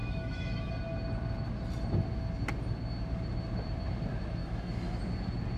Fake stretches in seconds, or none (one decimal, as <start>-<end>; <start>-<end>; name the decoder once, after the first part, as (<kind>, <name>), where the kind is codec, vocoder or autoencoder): 0.0-0.7 (autoencoder, DAC-VAE); 4.4-5.0